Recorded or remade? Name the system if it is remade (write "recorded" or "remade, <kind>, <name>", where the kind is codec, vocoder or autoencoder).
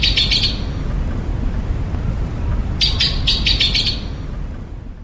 recorded